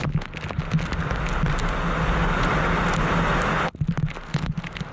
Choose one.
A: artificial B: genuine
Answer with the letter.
B